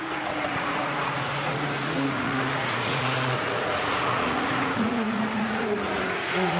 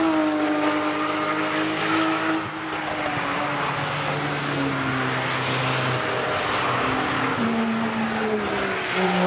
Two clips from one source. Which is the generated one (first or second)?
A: first